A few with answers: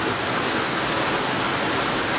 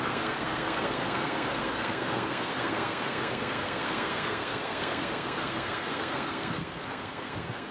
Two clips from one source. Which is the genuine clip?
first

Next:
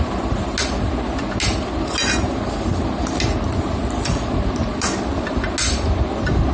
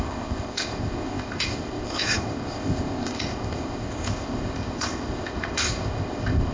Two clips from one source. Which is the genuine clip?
first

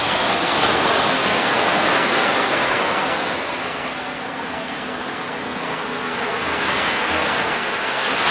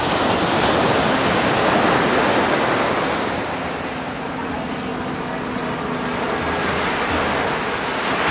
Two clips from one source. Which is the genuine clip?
second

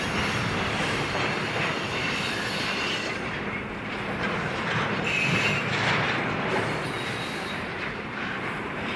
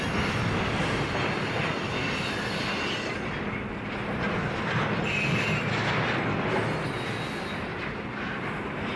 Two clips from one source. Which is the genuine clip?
second